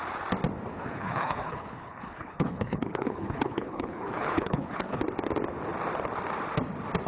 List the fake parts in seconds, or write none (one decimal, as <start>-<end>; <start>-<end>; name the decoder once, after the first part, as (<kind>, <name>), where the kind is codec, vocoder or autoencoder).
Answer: 0.7-5.0 (codec, HILCodec)